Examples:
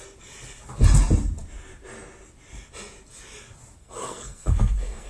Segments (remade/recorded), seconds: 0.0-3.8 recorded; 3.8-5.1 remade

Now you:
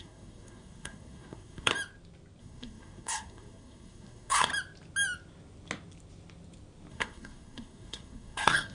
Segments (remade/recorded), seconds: 0.0-1.7 remade; 1.7-2.4 recorded; 2.4-4.5 remade; 4.5-6.9 recorded; 6.9-8.7 remade

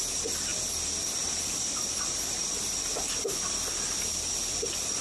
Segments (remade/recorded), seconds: 0.0-5.0 recorded

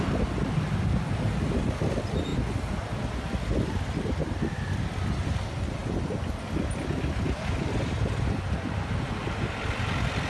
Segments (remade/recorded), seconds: 0.0-10.3 recorded

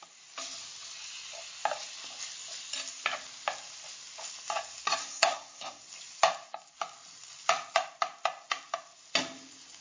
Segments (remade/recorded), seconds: 0.0-5.0 recorded; 5.0-5.8 remade; 5.8-9.8 recorded

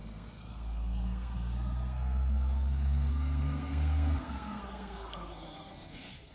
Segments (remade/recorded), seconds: 0.0-6.3 remade

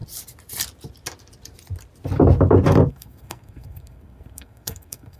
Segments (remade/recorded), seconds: 0.0-2.9 recorded; 2.9-5.2 remade